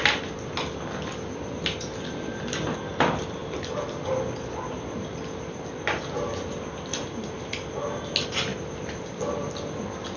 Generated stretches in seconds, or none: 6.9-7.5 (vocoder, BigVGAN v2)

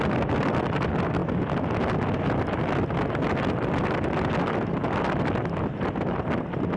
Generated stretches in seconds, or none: none